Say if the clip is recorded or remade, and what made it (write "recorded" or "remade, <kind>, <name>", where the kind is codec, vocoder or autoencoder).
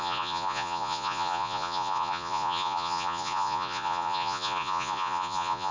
remade, vocoder, Vocos